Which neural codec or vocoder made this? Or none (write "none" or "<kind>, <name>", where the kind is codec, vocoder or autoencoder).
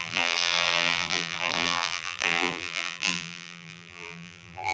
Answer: vocoder, BigVGAN v2